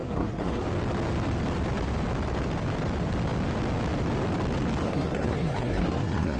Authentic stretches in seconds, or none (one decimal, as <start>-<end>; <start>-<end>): 0.6-4.8